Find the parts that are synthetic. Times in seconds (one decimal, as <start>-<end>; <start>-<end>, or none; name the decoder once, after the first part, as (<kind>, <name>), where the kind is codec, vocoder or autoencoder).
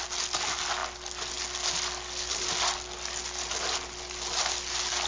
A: none